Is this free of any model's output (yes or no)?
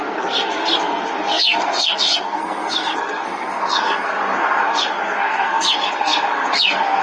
no